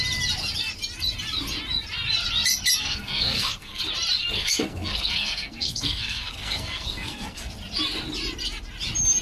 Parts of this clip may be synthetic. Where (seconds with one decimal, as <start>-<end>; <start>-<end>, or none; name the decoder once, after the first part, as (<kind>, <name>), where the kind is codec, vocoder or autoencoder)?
2.8-3.8 (codec, SNAC); 4.2-7.5